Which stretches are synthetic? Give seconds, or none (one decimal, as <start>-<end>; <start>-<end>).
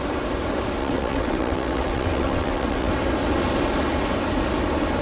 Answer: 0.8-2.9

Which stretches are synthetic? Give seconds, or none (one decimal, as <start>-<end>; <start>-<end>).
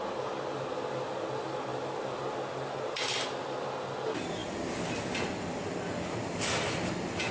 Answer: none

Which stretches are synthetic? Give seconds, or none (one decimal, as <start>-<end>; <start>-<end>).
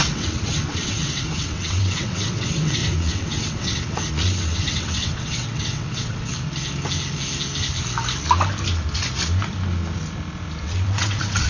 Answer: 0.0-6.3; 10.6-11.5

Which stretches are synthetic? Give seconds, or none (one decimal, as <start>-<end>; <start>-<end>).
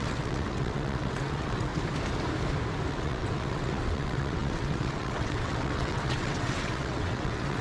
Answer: 0.0-1.7; 2.9-7.6